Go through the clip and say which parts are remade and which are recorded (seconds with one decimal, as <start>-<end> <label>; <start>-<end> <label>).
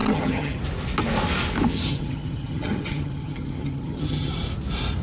0.0-0.6 remade; 0.6-1.7 recorded; 1.7-4.3 remade; 4.3-5.0 recorded